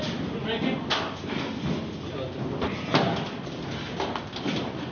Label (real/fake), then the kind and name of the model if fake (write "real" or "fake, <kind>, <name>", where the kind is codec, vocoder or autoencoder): real